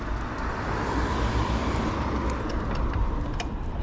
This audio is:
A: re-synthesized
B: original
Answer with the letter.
A